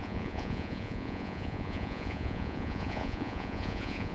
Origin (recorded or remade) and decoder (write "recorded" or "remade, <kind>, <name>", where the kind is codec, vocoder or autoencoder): remade, vocoder, Vocos